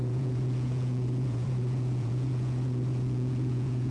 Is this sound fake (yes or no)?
yes